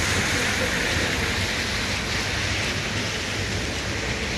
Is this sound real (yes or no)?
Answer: yes